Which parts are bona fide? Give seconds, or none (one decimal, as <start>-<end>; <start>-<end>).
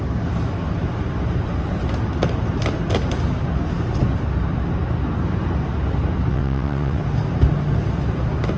0.0-6.3; 7.0-8.6